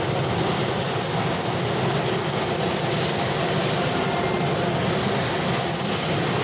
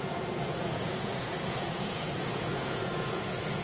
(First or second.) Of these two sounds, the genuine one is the first